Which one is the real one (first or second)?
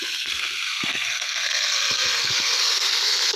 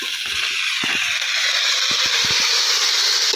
second